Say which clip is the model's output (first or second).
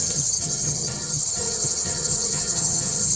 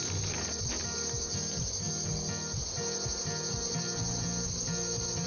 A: first